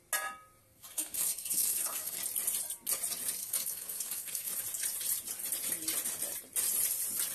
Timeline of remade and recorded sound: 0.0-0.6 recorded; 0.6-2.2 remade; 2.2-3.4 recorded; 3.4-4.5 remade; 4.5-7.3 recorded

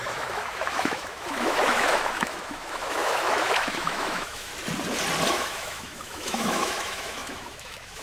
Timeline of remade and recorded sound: 0.0-4.5 remade; 4.5-5.3 recorded; 5.3-8.0 remade